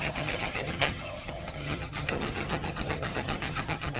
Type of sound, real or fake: fake